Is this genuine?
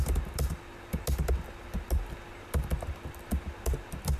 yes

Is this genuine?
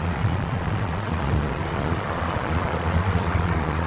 no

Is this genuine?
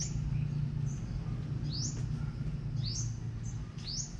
yes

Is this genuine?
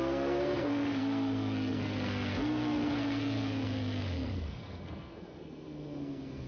no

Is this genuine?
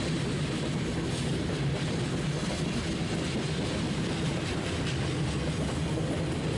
yes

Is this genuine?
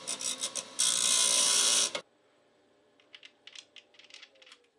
yes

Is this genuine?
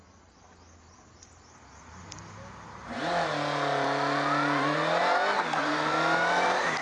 yes